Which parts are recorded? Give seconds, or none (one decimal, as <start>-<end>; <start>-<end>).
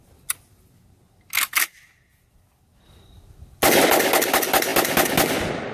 0.0-5.7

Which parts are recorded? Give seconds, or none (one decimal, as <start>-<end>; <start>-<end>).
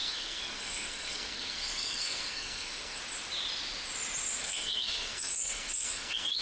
3.0-4.4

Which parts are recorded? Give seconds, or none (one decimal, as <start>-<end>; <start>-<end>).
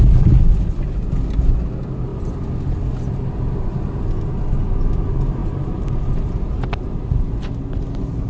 0.0-8.3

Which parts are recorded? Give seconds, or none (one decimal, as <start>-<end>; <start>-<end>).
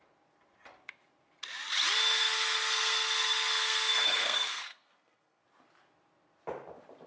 0.0-2.2; 5.4-7.1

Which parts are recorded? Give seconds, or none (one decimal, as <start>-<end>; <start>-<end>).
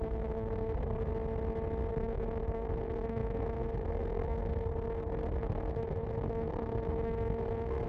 1.1-1.9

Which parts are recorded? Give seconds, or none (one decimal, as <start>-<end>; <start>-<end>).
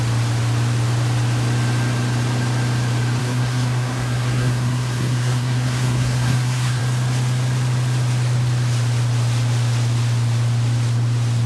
0.0-3.2; 6.8-11.5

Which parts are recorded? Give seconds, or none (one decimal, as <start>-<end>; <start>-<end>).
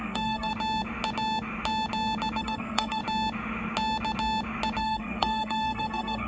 0.5-2.4; 3.0-4.8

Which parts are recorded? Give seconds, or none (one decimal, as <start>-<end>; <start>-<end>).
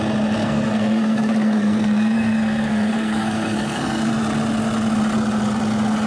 0.0-0.4; 4.1-6.1